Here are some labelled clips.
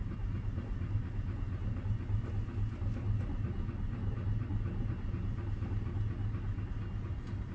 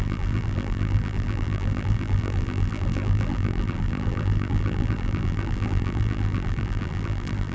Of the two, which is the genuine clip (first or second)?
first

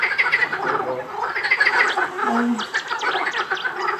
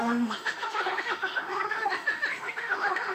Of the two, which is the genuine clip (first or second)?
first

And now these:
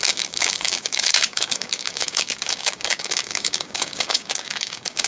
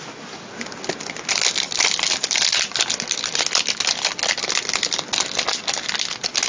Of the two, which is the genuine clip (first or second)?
second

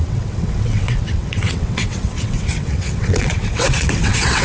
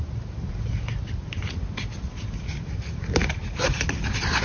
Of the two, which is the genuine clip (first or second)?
second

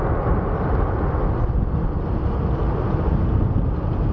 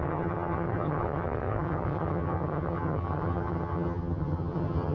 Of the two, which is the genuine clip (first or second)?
first